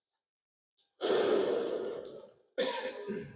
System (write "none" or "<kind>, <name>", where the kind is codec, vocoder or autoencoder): none